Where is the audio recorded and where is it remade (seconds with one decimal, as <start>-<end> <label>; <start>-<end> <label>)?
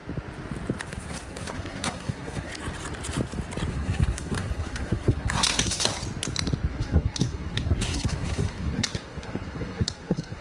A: 0.0-0.9 recorded; 0.9-2.5 remade; 2.5-3.7 recorded; 3.7-5.9 remade; 5.9-6.7 recorded; 6.7-10.4 remade